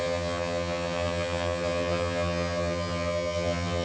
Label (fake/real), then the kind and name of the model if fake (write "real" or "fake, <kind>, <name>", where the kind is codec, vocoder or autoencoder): fake, vocoder, HiFi-GAN